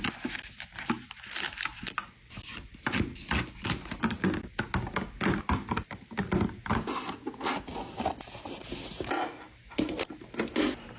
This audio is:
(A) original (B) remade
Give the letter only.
A